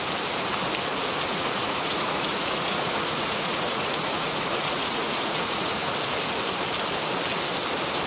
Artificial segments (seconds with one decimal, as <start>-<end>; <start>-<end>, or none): 0.9-5.7